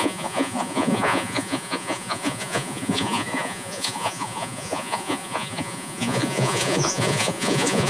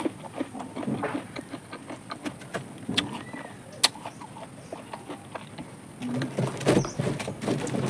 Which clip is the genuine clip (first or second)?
second